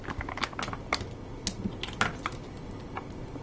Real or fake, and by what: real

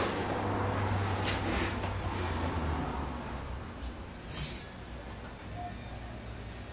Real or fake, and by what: real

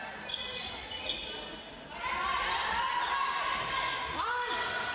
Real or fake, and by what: real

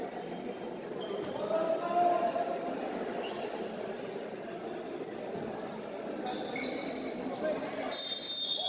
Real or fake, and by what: real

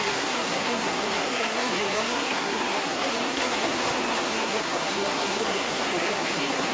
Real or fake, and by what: fake, codec, SNAC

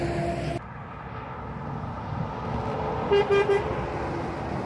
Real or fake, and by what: real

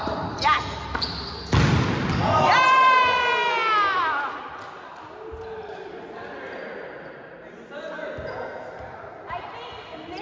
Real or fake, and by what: real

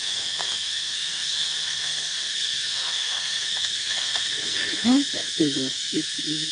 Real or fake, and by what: fake, codec, SNAC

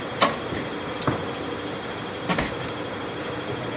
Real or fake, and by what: real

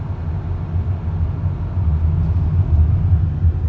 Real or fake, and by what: real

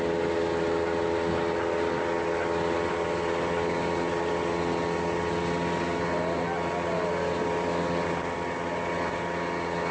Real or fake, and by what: real